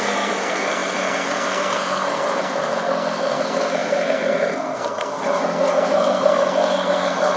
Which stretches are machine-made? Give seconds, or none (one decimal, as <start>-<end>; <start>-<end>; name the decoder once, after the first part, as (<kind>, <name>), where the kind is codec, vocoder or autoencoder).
0.0-7.4 (codec, SNAC)